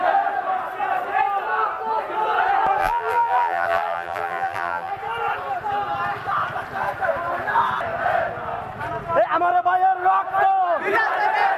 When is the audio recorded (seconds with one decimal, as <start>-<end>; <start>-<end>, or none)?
0.0-2.8; 4.9-11.6